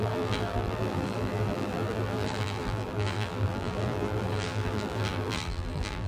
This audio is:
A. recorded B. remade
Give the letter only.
B